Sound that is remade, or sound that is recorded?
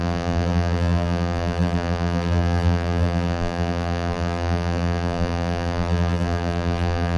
remade